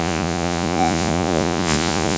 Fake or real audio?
fake